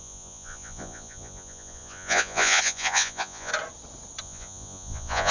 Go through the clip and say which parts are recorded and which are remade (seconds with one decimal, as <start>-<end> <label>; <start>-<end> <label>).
0.0-3.5 remade; 3.5-4.2 recorded; 4.2-5.3 remade